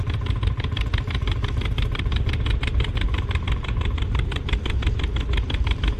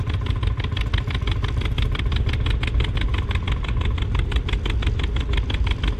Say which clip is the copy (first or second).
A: first